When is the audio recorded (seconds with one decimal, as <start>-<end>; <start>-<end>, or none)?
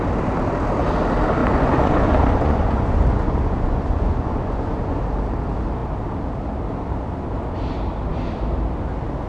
0.0-1.4; 5.0-9.3